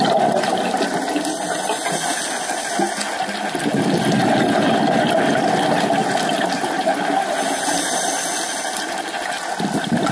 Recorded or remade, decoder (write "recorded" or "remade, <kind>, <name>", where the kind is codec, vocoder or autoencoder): recorded